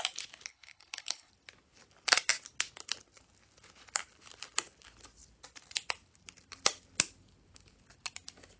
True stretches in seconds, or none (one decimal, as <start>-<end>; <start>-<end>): 0.0-0.5; 1.3-8.6